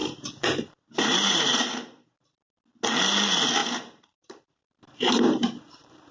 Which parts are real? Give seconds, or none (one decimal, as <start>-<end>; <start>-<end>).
2.6-3.6